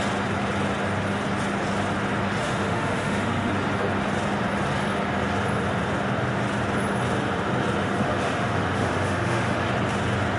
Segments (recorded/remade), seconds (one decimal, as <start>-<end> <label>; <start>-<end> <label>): 0.0-2.4 recorded; 2.4-3.5 remade; 3.5-7.8 recorded; 7.8-9.7 remade; 9.7-10.4 recorded